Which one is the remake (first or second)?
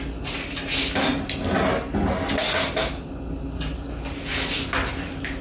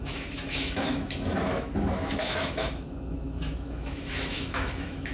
second